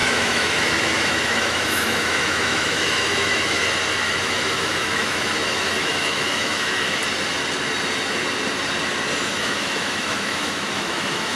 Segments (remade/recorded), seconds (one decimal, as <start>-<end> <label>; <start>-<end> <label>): 0.0-3.6 remade; 3.6-4.2 recorded; 4.2-7.0 remade; 7.0-9.2 recorded; 9.2-11.4 remade